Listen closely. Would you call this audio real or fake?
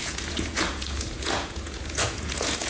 fake